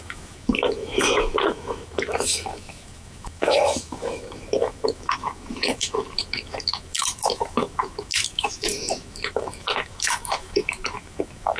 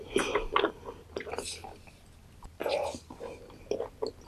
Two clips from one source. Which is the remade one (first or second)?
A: first